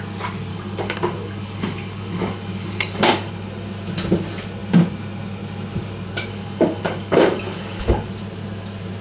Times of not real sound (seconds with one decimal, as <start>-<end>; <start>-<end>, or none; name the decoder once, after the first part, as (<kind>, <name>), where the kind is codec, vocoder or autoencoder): 0.5-3.3 (codec, DAC); 6.3-8.1